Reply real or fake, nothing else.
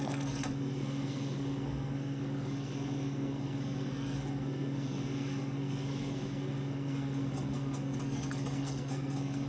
fake